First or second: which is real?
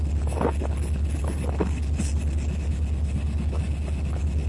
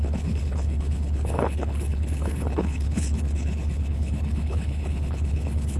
first